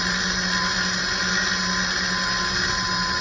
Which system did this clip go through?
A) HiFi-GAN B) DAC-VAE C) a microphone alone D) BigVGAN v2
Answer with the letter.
C